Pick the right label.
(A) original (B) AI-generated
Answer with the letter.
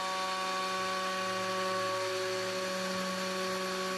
A